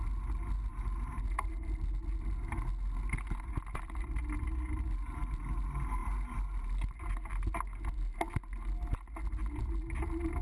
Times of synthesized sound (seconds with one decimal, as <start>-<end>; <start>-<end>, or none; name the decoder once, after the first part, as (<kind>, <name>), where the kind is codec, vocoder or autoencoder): 3.7-4.2 (vocoder, BigVGAN v2)